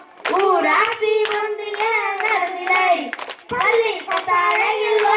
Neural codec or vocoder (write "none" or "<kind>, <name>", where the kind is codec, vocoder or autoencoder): none